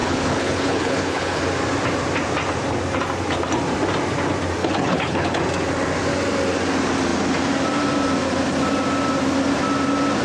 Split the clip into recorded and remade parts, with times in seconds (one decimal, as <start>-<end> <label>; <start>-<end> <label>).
0.0-1.4 remade; 1.4-4.6 recorded; 4.6-5.4 remade; 5.4-10.2 recorded